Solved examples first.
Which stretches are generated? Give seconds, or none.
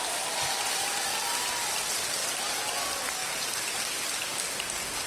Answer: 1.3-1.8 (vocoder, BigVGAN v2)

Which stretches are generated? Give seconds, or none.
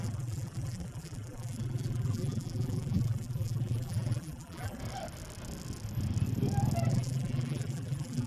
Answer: 0.0-4.8 (vocoder, BigVGAN v2); 6.9-8.3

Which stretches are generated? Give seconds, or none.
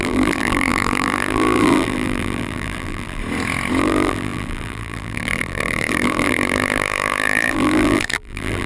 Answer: 0.0-3.2 (vocoder, BigVGAN v2); 3.8-8.7